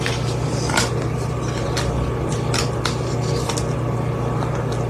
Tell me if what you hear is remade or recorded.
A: recorded